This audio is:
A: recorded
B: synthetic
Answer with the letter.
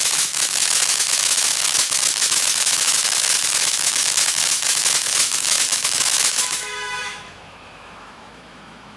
B